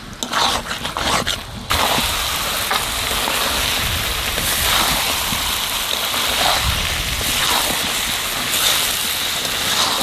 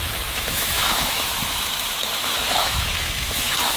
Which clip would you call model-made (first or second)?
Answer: second